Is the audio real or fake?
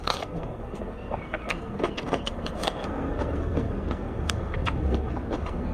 fake